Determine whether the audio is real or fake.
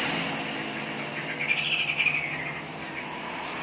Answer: real